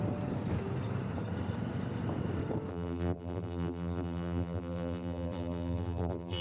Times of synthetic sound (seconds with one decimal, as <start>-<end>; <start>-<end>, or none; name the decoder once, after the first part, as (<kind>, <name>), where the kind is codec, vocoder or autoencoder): 2.7-6.4 (vocoder, BigVGAN v2)